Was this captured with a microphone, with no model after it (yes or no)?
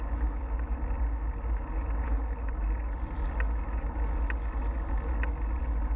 yes